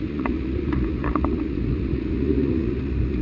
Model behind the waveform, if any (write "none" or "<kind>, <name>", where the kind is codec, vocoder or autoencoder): vocoder, Vocos